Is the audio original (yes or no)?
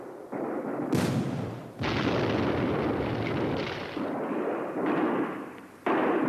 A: yes